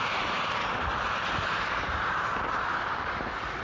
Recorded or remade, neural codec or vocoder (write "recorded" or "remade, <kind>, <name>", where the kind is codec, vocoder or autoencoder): remade, vocoder, BigVGAN v2